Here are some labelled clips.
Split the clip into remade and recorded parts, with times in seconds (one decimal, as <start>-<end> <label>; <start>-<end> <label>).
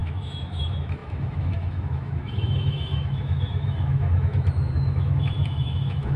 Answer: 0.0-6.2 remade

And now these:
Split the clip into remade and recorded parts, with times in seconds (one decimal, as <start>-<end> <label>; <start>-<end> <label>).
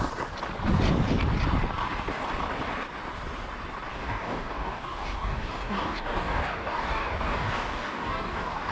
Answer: 0.0-3.9 recorded; 3.9-8.7 remade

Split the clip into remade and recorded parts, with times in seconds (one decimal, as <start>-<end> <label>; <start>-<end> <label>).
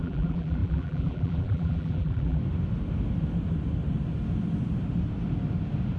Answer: 0.0-2.4 remade; 2.4-6.0 recorded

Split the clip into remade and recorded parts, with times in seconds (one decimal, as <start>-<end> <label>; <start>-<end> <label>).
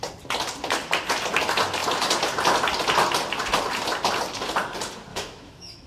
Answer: 0.0-5.1 recorded; 5.1-5.9 remade